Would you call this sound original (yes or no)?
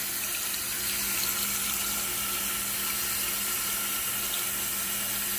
yes